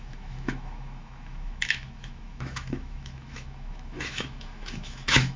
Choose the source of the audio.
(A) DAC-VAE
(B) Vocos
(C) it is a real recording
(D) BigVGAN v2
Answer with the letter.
A